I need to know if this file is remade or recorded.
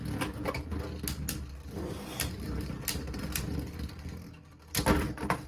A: recorded